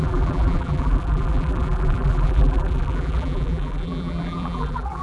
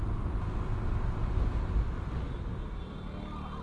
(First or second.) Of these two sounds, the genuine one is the second